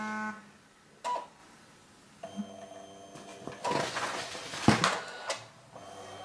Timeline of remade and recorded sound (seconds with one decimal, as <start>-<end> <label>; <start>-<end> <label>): 0.0-3.3 recorded; 3.3-4.3 remade; 4.3-6.2 recorded